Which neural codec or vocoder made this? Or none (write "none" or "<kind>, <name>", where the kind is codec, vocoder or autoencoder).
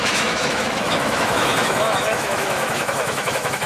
autoencoder, DAC-VAE